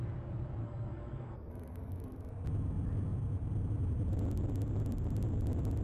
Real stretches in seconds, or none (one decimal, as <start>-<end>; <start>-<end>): 0.0-0.6; 2.2-5.8